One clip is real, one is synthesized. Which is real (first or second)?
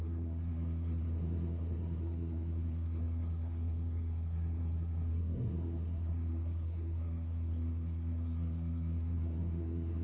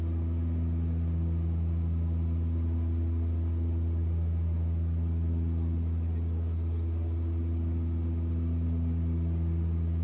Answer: second